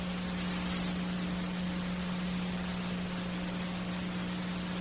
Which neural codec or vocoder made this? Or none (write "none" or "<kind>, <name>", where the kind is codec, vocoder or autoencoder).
none